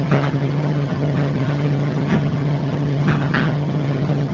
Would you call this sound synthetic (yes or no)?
yes